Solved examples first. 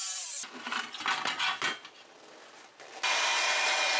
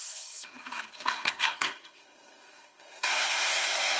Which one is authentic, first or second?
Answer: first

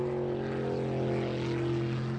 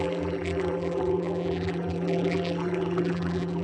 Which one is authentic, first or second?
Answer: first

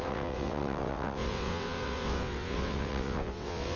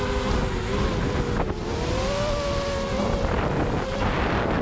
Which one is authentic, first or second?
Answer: second